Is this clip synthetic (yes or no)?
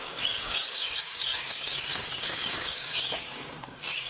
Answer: yes